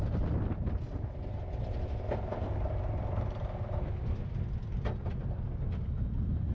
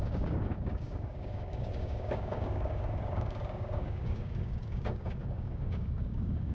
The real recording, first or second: first